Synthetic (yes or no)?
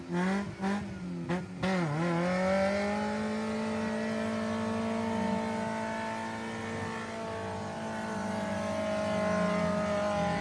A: no